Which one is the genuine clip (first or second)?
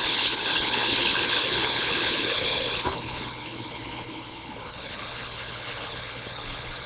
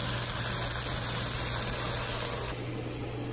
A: second